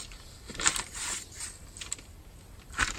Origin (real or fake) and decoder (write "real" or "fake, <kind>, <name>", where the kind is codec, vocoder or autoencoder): real